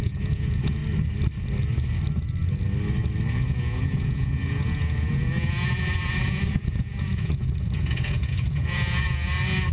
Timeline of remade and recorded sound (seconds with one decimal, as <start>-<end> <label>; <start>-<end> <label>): 0.0-0.8 remade; 0.8-3.3 recorded; 3.3-9.7 remade